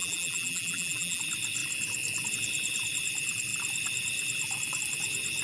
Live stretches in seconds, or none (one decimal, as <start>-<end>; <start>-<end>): 1.2-5.4

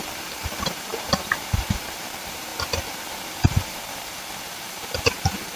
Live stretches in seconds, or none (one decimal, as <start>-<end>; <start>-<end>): none

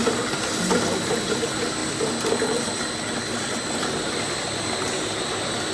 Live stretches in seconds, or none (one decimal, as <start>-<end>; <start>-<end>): 0.0-5.7

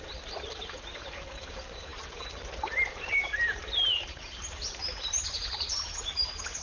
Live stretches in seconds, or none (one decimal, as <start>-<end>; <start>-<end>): 1.9-2.9

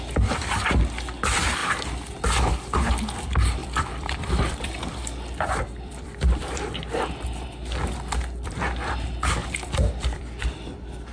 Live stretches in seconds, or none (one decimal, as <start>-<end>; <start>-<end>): 0.0-3.6; 7.0-9.4; 10.4-11.1

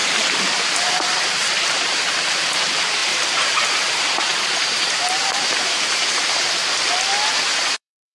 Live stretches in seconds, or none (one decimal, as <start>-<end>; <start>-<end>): 0.0-0.9; 6.6-7.3